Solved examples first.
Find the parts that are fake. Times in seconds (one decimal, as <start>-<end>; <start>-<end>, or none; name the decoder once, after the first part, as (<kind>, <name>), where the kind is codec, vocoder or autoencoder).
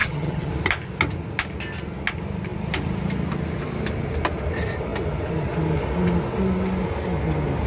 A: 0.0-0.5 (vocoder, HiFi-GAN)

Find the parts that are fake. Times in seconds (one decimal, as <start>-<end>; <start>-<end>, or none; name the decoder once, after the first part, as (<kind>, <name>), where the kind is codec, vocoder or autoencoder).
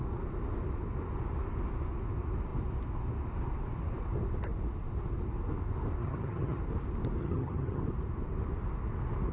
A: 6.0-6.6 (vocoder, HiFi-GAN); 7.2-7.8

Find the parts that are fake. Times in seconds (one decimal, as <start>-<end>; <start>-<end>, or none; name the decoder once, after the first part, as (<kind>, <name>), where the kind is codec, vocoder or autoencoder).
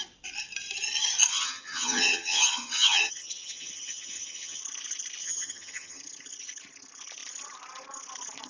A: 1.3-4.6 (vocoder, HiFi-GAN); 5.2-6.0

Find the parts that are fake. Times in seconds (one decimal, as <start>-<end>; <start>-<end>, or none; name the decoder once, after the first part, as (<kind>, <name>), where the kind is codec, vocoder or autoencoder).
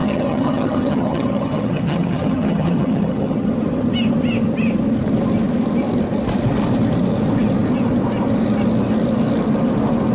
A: 0.0-3.5 (vocoder, HiFi-GAN)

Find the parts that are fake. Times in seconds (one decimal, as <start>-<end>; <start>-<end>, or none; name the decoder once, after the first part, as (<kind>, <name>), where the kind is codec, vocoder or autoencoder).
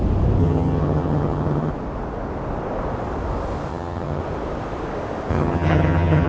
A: 0.4-1.7 (vocoder, HiFi-GAN); 3.7-4.2; 5.3-6.3